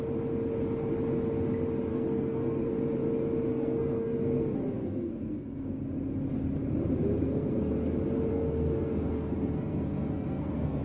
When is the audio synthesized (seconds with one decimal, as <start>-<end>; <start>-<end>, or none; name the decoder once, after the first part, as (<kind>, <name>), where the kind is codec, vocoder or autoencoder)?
1.9-2.7 (codec, SNAC); 3.5-5.8; 7.2-7.7; 8.3-10.8